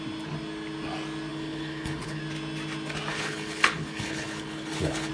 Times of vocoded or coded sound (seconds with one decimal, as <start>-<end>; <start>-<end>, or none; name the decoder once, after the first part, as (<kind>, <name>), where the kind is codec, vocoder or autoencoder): 1.3-2.2 (codec, HILCodec); 3.1-5.1